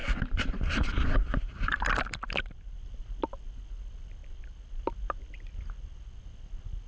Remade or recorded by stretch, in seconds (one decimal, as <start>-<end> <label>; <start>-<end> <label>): 0.0-3.2 remade; 3.2-4.2 recorded; 4.2-4.8 remade; 4.8-6.9 recorded